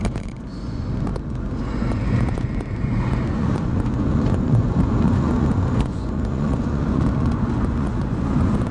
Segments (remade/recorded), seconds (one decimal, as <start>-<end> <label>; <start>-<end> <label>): 0.0-8.7 remade